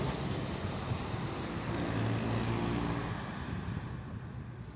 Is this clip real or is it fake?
real